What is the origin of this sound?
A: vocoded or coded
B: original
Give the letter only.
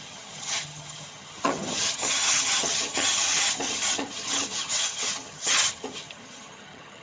A